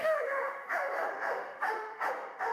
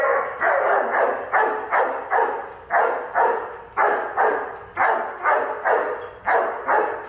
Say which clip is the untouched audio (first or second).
second